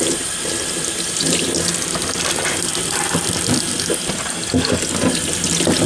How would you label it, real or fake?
real